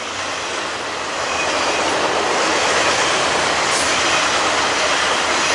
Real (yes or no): yes